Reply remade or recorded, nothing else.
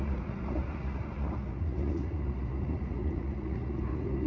remade